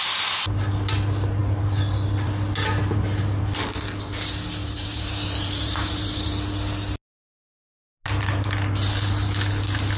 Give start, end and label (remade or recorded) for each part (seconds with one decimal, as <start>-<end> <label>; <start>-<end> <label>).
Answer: 0.0-4.6 recorded; 4.6-6.3 remade; 6.3-10.0 recorded